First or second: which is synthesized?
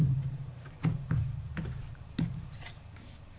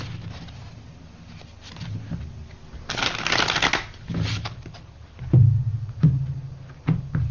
first